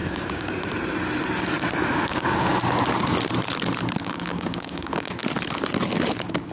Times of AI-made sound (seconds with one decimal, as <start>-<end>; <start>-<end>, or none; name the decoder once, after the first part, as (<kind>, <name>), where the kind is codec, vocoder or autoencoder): 0.0-0.6 (codec, DAC); 1.9-2.5; 4.0-5.2